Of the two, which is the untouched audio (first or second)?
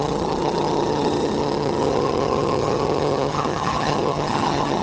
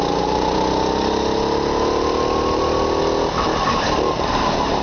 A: second